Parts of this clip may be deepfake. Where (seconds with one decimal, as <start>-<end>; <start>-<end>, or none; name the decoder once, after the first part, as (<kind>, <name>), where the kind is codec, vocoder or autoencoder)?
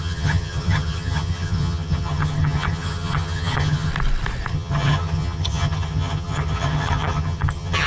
0.0-3.9 (vocoder, HiFi-GAN); 4.5-7.9